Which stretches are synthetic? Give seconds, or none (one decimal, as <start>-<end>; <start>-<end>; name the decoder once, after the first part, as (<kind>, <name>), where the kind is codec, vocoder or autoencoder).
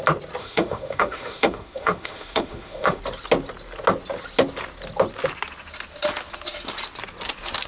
0.4-3.0 (autoencoder, DAC-VAE)